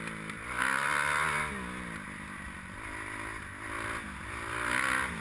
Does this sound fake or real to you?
real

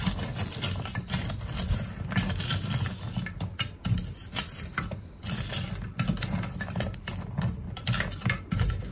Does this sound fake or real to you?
real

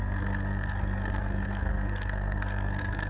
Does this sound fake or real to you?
fake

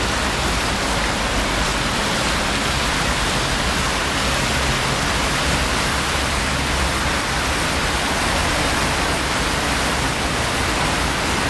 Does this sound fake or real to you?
real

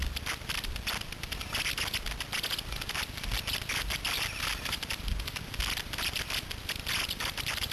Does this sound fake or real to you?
real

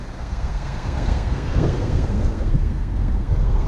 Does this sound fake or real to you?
fake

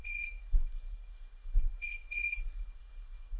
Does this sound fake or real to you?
fake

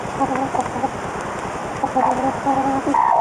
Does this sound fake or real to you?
real